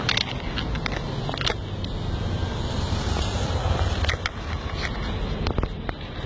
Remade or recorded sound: recorded